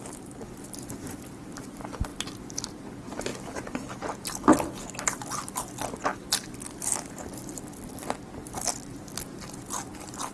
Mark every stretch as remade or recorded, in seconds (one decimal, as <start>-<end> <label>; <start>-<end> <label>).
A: 0.0-10.3 recorded